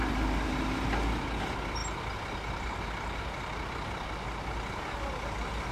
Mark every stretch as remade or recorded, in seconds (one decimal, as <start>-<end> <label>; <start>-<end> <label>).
0.0-5.7 recorded